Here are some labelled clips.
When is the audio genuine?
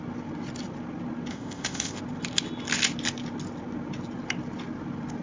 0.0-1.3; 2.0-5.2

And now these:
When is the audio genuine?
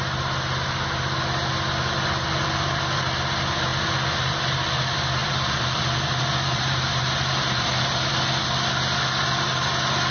0.0-5.2; 8.1-10.1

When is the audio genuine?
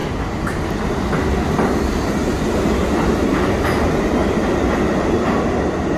1.0-6.0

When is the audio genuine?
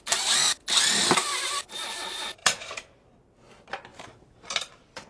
0.0-2.4; 3.1-3.9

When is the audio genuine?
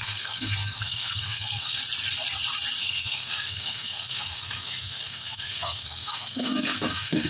1.8-2.8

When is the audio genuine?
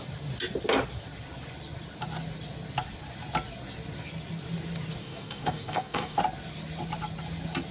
0.0-5.0; 6.2-7.7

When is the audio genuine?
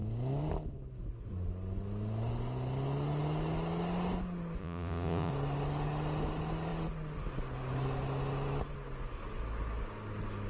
0.0-4.6; 5.3-10.5